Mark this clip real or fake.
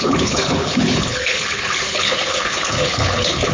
fake